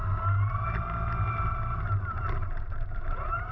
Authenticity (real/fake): fake